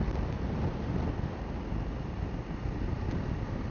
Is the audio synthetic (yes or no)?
no